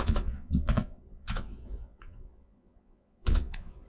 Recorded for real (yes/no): no